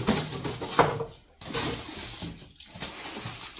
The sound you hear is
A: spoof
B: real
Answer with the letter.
B